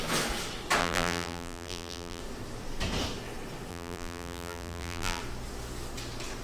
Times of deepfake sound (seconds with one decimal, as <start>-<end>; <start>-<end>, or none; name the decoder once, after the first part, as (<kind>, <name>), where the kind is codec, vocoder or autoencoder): 0.8-2.2 (vocoder, BigVGAN v2); 3.7-5.2